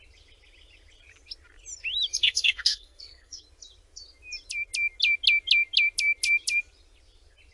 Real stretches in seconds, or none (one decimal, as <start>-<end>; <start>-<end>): 0.0-2.2; 3.4-7.5